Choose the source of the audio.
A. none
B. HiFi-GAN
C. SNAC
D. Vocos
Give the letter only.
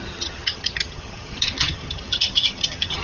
B